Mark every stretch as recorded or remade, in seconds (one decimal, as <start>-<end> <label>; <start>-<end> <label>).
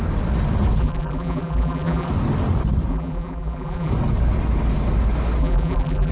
0.0-0.8 recorded; 0.8-2.1 remade; 2.1-2.9 recorded; 2.9-3.9 remade; 3.9-5.4 recorded; 5.4-6.1 remade